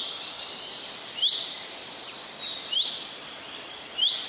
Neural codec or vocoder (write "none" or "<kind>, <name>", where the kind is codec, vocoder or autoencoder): vocoder, BigVGAN v2